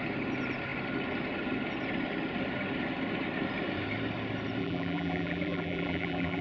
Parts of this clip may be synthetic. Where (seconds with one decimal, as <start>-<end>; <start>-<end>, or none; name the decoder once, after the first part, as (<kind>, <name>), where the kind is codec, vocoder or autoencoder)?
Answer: 4.6-6.4 (vocoder, BigVGAN v2)